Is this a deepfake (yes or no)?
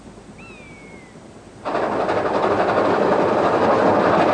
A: no